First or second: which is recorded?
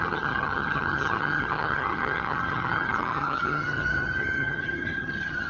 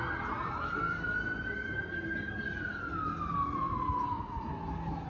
second